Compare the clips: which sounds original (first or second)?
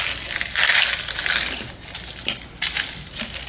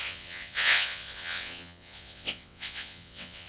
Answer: first